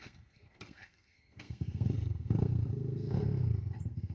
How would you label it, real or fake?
fake